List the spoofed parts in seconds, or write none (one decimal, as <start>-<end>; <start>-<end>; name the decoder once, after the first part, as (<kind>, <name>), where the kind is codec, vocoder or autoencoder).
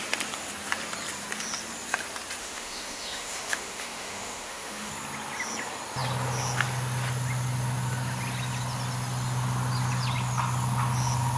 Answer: 2.4-4.9 (autoencoder, DAC-VAE)